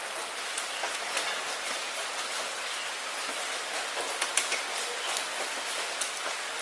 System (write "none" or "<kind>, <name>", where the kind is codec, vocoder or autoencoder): none